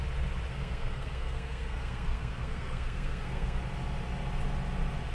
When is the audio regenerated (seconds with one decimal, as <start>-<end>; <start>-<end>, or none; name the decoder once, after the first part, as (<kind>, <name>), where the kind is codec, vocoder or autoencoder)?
0.5-3.6 (codec, SNAC)